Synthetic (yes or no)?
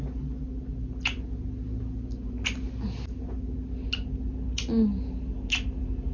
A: no